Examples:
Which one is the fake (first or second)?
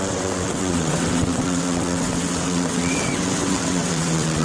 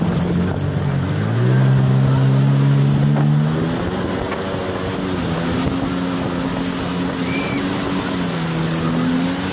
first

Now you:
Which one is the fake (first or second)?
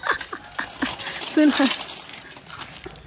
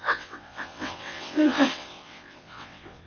second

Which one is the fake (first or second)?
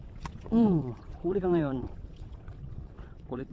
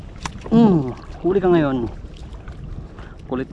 first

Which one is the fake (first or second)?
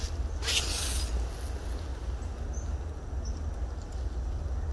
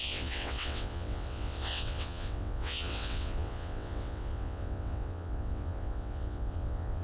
second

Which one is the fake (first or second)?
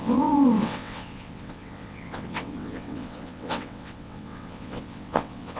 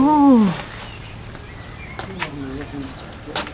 first